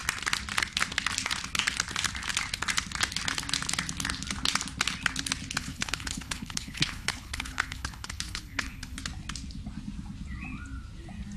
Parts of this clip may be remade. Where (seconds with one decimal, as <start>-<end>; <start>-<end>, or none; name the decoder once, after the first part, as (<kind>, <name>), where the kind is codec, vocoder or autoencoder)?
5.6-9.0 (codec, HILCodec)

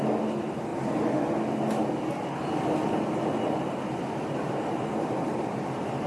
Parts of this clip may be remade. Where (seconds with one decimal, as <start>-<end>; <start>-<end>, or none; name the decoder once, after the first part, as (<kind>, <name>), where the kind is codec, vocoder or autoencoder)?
none

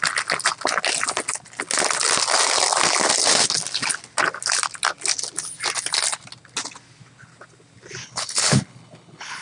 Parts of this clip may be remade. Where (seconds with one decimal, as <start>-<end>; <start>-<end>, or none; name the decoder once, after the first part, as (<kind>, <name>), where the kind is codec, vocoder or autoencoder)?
8.0-9.4 (codec, HILCodec)